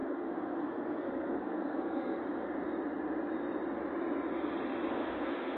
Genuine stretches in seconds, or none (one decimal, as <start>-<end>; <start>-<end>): 2.2-4.9